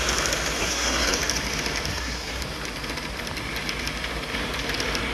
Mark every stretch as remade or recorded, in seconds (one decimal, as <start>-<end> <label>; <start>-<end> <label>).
0.0-0.6 recorded; 0.6-1.2 remade; 1.2-1.9 recorded; 1.9-2.4 remade; 2.4-5.1 recorded